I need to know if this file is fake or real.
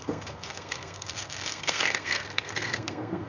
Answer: fake